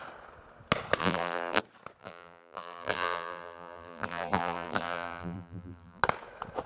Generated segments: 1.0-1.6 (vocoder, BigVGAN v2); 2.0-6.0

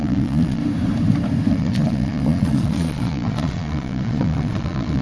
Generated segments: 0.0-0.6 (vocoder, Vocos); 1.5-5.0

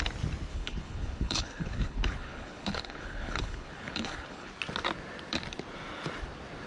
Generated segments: 0.5-4.5 (codec, HILCodec)

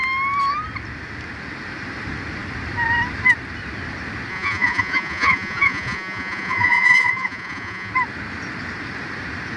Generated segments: 4.3-7.9 (vocoder, Vocos)

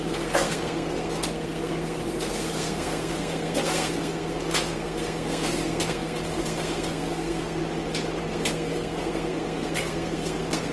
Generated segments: 0.0-7.6 (codec, SNAC); 8.2-10.7

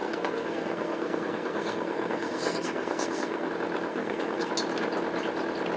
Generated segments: 0.0-3.5 (codec, SNAC); 3.9-4.5

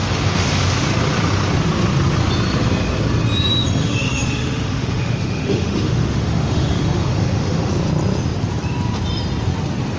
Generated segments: 0.0-0.6 (autoencoder, DAC-VAE); 3.8-7.7